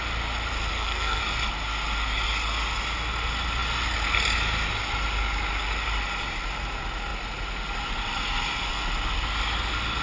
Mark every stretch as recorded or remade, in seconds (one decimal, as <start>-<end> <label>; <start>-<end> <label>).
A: 0.0-0.7 recorded; 0.7-1.2 remade; 1.2-10.0 recorded